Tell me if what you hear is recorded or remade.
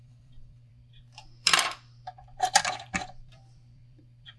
remade